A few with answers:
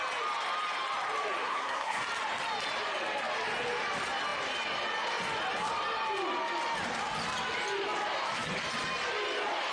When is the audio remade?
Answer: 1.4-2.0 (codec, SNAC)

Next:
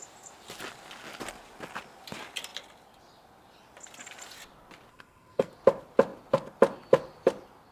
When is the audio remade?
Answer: 4.9-5.5 (codec, SNAC)

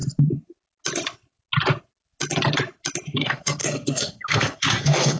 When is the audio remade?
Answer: 3.1-5.2 (codec, SNAC)

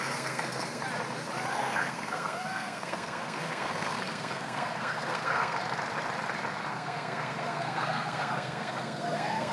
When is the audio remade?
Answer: 0.0-0.8 (codec, SNAC); 1.5-5.6; 6.7-9.5

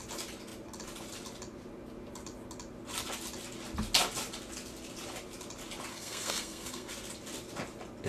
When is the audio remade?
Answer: 5.9-6.9 (codec, SNAC)

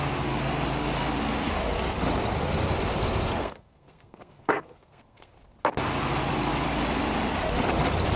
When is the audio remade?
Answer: 3.4-5.3 (codec, SNAC)

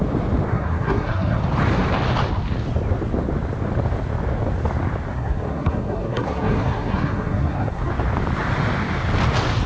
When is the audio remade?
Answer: 0.5-1.4 (codec, SNAC); 5.1-7.9